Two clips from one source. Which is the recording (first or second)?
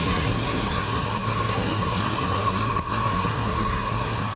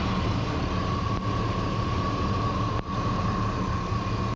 second